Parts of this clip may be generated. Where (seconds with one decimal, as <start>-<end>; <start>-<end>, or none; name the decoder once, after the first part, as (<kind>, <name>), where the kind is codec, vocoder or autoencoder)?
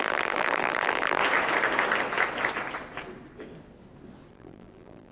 0.0-1.2 (vocoder, BigVGAN v2); 4.3-5.1